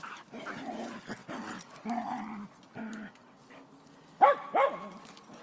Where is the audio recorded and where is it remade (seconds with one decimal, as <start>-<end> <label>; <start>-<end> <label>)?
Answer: 0.0-5.4 recorded